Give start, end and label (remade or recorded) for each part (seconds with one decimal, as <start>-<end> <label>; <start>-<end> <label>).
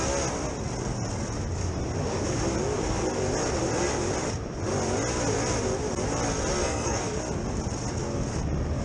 0.0-6.6 recorded; 6.6-7.2 remade; 7.2-8.8 recorded